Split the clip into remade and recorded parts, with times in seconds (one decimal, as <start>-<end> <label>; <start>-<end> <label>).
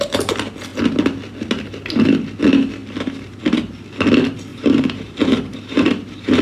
0.0-2.8 recorded; 2.8-3.4 remade; 3.4-4.5 recorded; 4.5-6.4 remade